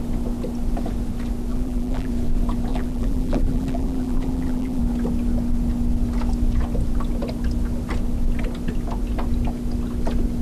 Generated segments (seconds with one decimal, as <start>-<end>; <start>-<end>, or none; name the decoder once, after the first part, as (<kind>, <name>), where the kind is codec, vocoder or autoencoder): 1.5-2.1 (vocoder, BigVGAN v2); 2.7-4.8